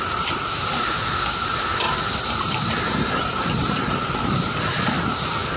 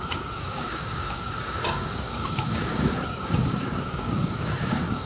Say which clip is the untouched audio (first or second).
first